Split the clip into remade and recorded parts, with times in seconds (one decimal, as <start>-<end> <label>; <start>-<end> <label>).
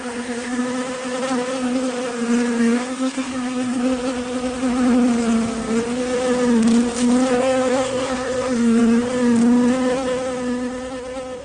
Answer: 0.0-0.6 remade; 0.6-2.6 recorded; 2.6-3.8 remade; 3.8-7.4 recorded; 7.4-8.8 remade; 8.8-11.4 recorded